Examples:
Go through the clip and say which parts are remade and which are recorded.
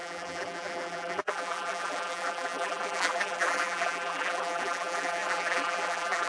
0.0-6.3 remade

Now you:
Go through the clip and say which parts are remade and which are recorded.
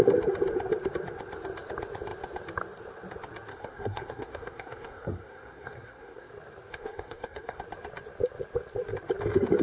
0.0-3.5 recorded; 3.5-6.3 remade; 6.3-6.7 recorded; 6.7-7.6 remade; 7.6-9.6 recorded